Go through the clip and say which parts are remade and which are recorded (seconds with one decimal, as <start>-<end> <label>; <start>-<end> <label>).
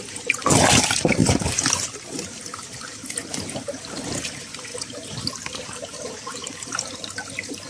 0.0-7.7 recorded